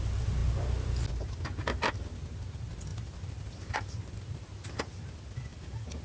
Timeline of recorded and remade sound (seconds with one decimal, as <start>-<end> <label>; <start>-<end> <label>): 0.0-5.5 recorded; 5.5-6.0 remade